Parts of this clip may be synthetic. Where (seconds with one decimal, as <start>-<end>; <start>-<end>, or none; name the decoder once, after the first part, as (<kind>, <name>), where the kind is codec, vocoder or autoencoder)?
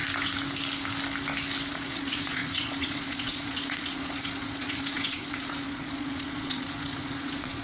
1.7-7.6 (vocoder, Vocos)